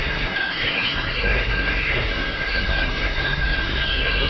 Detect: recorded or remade remade